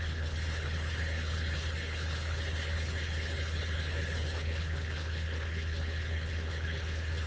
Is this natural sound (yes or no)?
no